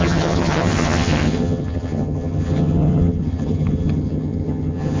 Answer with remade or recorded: remade